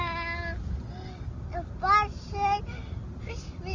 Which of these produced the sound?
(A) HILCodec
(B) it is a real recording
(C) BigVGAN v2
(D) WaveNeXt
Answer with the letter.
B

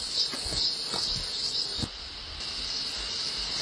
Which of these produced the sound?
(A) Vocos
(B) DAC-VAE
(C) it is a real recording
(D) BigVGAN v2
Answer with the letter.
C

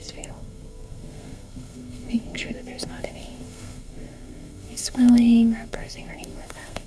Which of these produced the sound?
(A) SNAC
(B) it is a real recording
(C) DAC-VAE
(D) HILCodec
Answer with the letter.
A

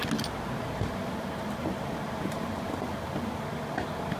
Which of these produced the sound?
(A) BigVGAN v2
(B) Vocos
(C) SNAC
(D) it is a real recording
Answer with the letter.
D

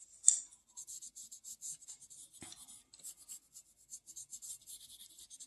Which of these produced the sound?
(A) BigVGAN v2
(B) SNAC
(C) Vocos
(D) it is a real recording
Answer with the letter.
D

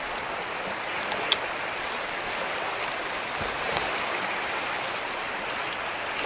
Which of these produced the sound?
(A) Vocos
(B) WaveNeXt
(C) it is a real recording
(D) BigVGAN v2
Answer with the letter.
C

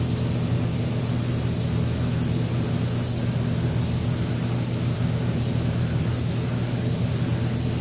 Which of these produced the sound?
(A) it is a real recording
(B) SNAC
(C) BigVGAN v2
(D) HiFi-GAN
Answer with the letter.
A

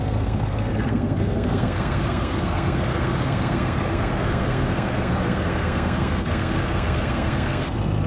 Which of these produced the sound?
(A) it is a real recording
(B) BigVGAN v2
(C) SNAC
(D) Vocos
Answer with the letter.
C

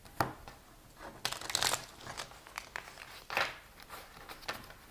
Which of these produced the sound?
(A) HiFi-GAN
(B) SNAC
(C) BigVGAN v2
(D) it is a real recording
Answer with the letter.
D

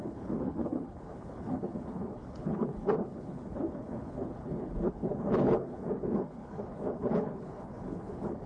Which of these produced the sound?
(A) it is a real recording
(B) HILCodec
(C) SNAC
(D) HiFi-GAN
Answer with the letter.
B